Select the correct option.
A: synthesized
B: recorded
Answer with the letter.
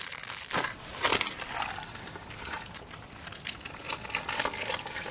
B